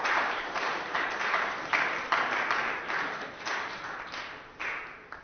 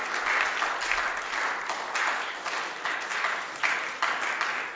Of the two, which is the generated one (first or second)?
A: first